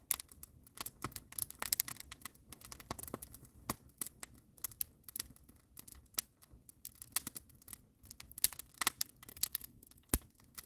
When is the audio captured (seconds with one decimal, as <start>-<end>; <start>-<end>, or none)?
0.0-9.3; 10.1-10.7